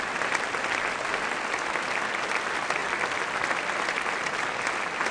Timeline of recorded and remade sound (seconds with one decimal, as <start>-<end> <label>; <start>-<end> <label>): 0.0-5.1 recorded